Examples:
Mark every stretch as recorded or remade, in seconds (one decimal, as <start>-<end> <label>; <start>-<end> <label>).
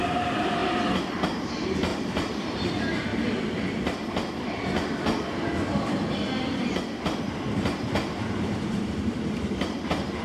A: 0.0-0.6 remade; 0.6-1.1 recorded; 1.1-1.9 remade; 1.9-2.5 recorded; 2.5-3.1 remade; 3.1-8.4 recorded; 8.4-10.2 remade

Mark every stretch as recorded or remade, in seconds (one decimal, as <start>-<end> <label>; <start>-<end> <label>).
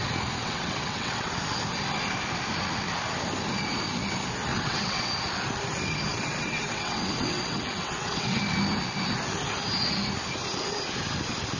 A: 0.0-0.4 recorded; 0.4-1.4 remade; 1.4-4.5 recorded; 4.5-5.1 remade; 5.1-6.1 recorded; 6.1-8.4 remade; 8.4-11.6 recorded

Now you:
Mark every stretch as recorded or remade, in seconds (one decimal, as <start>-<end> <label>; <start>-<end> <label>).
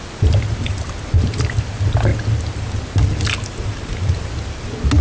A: 0.0-5.0 recorded